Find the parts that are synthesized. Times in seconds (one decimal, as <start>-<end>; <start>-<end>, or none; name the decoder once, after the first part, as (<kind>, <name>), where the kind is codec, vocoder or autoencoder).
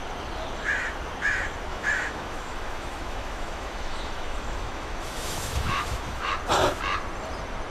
1.7-6.3 (autoencoder, DAC-VAE)